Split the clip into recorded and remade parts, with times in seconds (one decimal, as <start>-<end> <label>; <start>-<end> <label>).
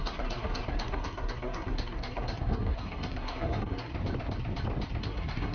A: 0.0-3.9 remade; 3.9-5.0 recorded; 5.0-5.5 remade